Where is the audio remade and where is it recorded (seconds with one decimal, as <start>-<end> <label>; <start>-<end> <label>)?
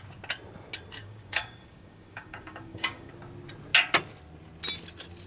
0.0-1.0 recorded; 1.0-3.1 remade; 3.1-5.3 recorded